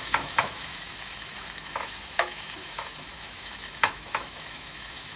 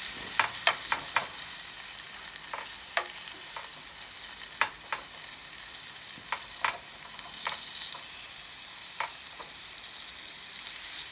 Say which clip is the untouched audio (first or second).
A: second